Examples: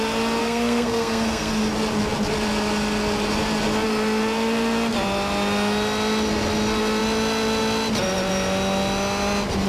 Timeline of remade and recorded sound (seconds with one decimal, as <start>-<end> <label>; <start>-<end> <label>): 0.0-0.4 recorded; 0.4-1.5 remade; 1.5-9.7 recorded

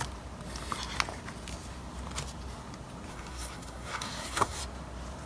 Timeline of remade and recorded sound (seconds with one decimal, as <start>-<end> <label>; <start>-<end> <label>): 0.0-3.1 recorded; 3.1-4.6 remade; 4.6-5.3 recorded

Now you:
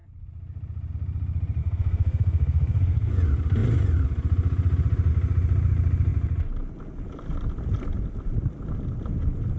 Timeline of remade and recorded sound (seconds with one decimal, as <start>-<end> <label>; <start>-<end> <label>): 0.0-1.6 recorded; 1.6-3.1 remade; 3.1-9.6 recorded

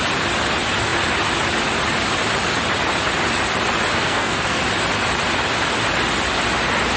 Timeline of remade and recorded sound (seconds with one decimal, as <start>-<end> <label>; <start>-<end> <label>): 0.0-3.9 recorded; 3.9-4.6 remade; 4.6-7.0 recorded

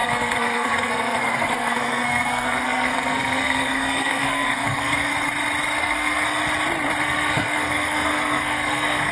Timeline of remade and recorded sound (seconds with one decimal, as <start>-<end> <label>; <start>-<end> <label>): 0.0-5.1 remade; 5.1-5.8 recorded; 5.8-6.4 remade; 6.4-7.0 recorded; 7.0-9.1 remade